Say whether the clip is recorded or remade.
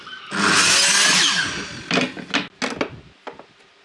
recorded